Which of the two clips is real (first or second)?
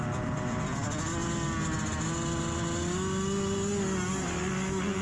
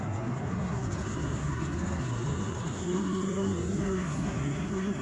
first